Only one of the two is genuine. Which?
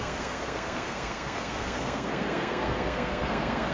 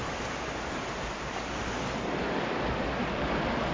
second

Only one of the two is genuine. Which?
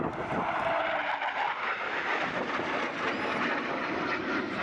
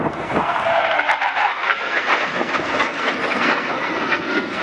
first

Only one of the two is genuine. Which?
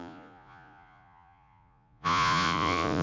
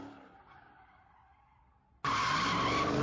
second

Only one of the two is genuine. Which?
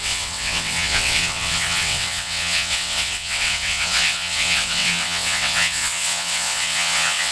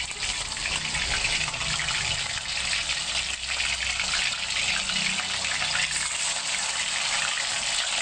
second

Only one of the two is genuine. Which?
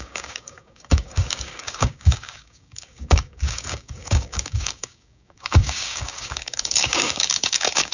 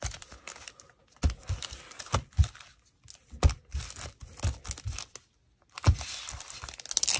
second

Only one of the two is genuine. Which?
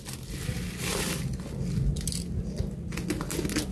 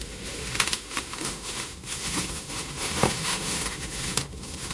first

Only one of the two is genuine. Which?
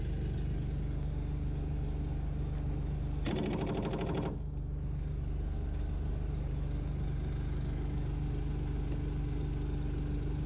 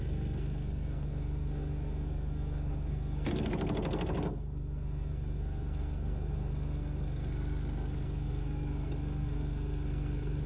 first